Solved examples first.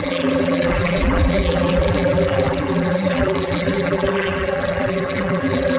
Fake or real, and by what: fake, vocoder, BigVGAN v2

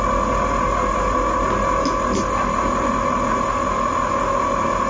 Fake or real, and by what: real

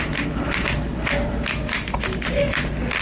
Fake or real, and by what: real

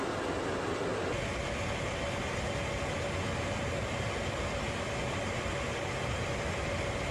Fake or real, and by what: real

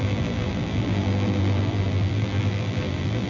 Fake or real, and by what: fake, vocoder, BigVGAN v2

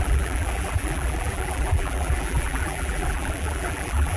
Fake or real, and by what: fake, vocoder, BigVGAN v2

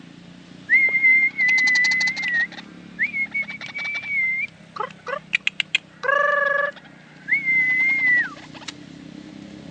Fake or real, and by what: real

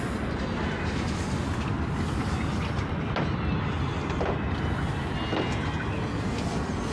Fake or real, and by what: real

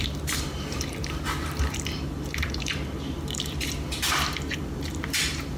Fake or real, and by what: fake, vocoder, BigVGAN v2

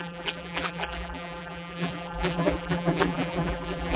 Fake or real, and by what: fake, vocoder, BigVGAN v2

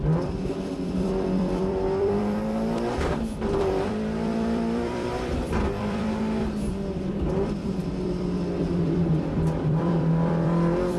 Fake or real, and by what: fake, vocoder, BigVGAN v2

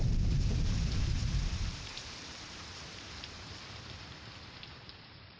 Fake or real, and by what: fake, vocoder, BigVGAN v2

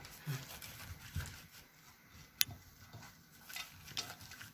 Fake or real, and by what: real